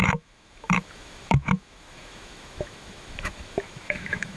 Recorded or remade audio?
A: remade